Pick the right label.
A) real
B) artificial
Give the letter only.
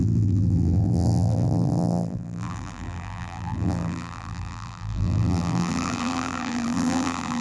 B